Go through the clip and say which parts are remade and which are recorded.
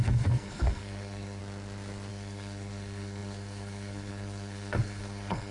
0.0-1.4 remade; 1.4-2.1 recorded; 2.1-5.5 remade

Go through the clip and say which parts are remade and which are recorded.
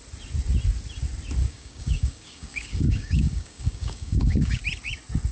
0.0-1.4 recorded; 1.4-4.6 remade; 4.6-5.3 recorded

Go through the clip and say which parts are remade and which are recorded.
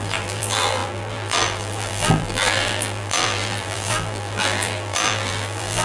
0.0-5.8 remade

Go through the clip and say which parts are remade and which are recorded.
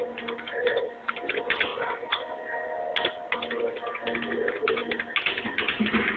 0.0-6.2 recorded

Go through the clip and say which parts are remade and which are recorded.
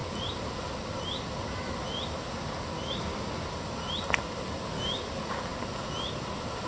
0.0-6.7 recorded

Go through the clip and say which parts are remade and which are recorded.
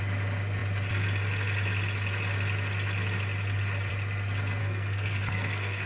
0.0-4.6 recorded; 4.6-5.9 remade